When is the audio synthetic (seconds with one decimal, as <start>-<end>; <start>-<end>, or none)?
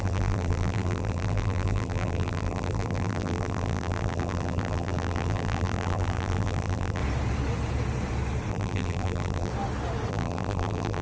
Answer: 0.0-7.0; 8.5-9.5; 10.1-11.0